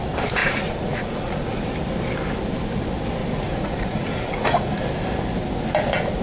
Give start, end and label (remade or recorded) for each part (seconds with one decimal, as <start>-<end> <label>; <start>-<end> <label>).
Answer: 0.0-0.4 recorded; 0.4-1.6 remade; 1.6-3.2 recorded; 3.2-4.9 remade; 4.9-6.2 recorded